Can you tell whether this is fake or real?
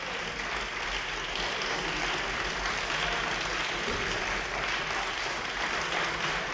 real